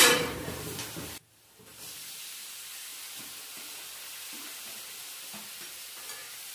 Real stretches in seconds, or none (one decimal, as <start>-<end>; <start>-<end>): 2.9-6.0